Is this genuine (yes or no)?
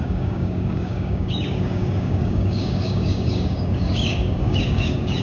no